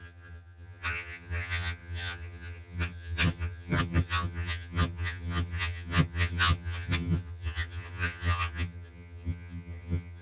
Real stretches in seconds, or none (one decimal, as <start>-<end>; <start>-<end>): none